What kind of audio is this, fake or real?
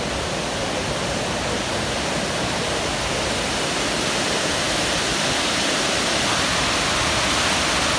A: real